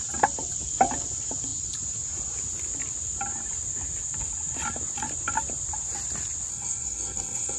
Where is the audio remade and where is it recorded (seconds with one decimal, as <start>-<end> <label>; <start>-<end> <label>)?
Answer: 0.0-6.5 recorded; 6.5-7.6 remade